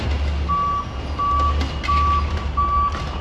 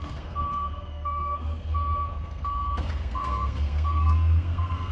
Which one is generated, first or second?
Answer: second